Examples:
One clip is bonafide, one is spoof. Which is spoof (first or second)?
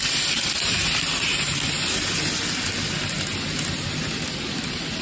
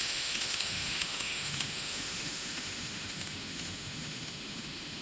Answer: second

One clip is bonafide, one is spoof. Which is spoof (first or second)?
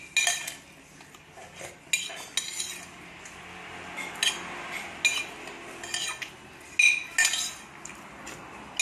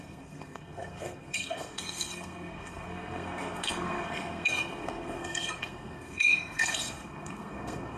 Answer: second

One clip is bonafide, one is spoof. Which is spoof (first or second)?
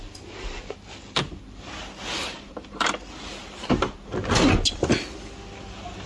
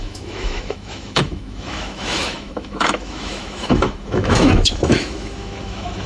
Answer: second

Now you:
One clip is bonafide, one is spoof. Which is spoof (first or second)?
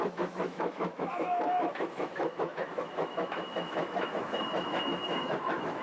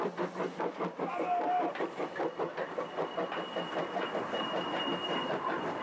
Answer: first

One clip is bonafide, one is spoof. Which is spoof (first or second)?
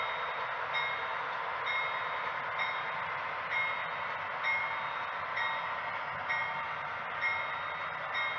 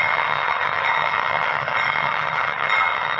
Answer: second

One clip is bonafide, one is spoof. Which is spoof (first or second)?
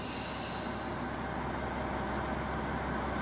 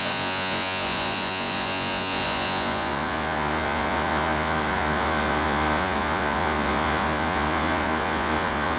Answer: second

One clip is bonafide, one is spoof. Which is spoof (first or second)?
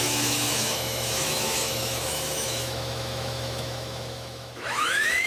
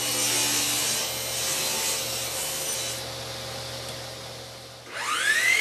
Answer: first